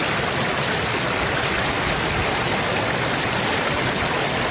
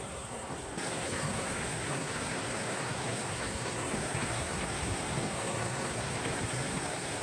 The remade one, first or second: second